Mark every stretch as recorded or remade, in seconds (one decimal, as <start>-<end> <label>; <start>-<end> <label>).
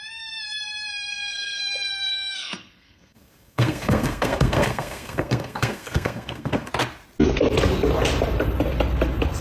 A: 0.0-1.1 recorded; 1.1-1.6 remade; 1.6-2.1 recorded; 2.1-6.7 remade; 6.7-9.4 recorded